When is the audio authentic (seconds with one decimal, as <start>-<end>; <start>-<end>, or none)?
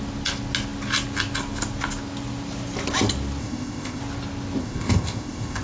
0.0-3.4; 4.0-4.6